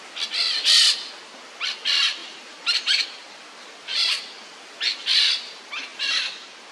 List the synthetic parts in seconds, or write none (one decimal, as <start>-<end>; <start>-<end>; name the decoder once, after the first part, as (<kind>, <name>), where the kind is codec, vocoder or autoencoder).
2.2-3.3 (vocoder, BigVGAN v2); 3.9-4.5; 5.9-6.7